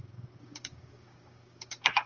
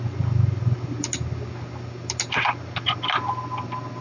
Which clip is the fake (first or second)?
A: first